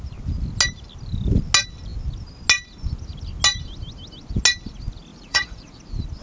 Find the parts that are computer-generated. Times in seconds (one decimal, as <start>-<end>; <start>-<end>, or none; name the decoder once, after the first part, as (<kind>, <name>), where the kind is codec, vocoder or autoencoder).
5.1-5.8 (vocoder, Vocos)